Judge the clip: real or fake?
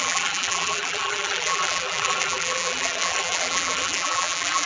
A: fake